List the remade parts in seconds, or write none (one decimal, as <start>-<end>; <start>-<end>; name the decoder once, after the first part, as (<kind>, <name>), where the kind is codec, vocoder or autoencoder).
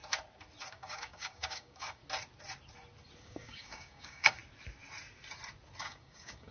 0.7-2.0 (codec, DAC); 3.2-4.4; 5.8-6.5